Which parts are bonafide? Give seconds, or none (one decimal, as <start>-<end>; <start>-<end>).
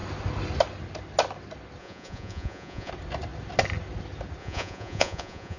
0.0-1.8; 2.9-4.4